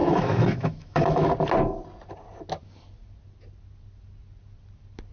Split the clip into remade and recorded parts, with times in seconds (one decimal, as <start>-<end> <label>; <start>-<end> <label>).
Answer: 0.0-1.3 remade; 1.3-5.1 recorded